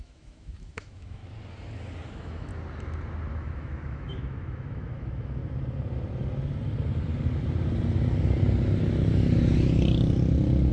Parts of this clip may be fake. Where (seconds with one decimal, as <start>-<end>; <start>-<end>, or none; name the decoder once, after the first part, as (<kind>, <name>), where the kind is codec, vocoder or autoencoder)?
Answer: 0.0-1.2 (autoencoder, DAC-VAE); 2.1-2.5; 3.3-5.4